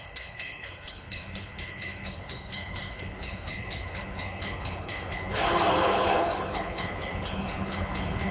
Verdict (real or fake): fake